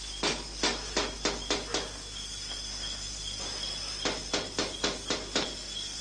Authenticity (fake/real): real